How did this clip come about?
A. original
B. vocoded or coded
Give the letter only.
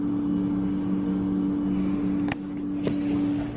A